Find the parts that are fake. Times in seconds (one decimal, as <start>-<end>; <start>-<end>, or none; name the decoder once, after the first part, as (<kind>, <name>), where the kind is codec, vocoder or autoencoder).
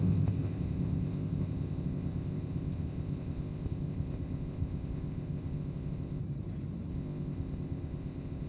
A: 0.0-6.2 (codec, ZipCodec); 6.9-8.5